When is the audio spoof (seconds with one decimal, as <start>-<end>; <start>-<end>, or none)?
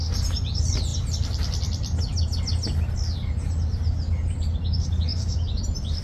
5.1-6.0